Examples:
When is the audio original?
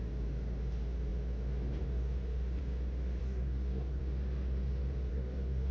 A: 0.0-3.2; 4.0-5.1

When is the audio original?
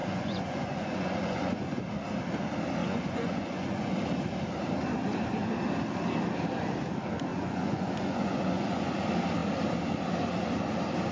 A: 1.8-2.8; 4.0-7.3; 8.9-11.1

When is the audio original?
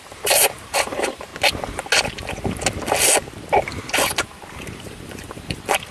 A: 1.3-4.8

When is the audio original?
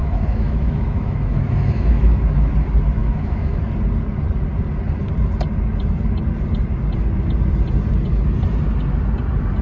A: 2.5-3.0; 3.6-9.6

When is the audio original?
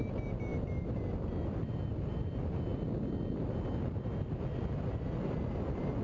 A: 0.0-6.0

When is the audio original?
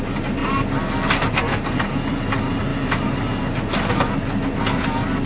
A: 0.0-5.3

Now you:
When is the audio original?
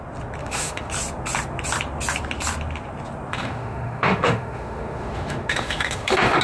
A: 0.0-0.4; 0.9-3.3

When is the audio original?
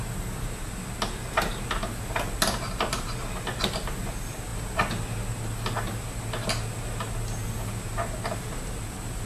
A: 0.0-9.3